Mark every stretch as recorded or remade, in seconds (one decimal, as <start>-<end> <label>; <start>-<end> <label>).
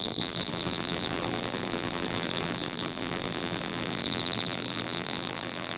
0.0-5.8 remade